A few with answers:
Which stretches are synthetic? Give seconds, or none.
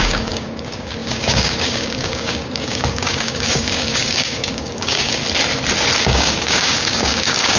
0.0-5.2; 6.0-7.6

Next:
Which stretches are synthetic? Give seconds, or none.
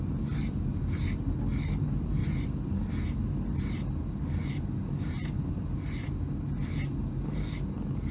none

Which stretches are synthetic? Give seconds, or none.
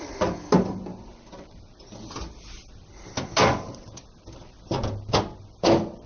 none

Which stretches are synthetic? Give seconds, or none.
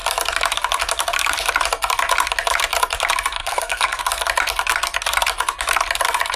3.4-4.0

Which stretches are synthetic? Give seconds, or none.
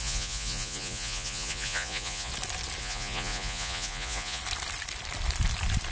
0.0-2.3; 2.8-4.4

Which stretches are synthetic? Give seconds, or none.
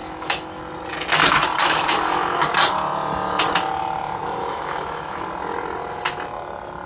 0.0-0.6; 1.6-2.4; 4.4-5.2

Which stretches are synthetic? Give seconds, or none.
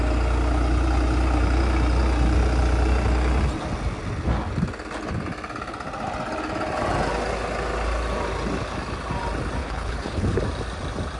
9.6-10.4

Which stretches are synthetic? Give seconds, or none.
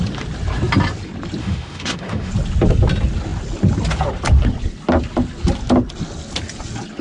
1.4-2.3